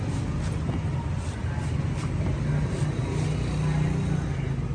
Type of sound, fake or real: real